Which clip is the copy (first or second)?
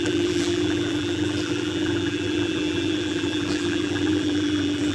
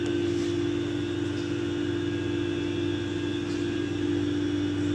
first